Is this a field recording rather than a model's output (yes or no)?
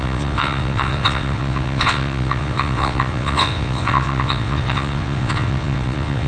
no